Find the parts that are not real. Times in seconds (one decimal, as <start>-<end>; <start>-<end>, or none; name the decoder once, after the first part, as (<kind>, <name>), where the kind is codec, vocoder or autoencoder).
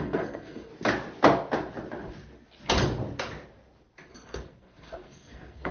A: 0.0-0.7 (codec, SNAC); 4.1-5.7